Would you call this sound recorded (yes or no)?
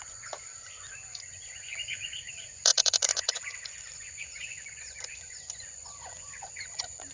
no